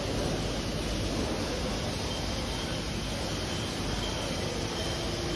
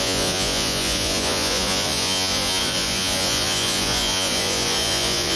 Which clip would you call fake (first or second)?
second